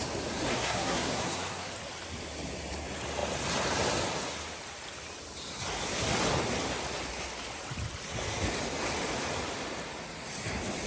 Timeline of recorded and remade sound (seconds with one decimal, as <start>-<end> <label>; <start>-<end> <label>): 0.0-0.5 recorded; 0.5-1.7 remade; 1.7-10.9 recorded